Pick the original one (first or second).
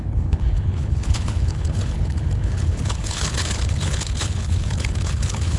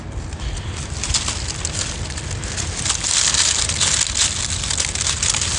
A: second